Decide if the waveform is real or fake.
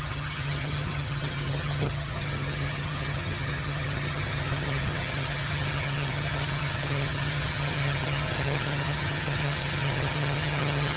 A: fake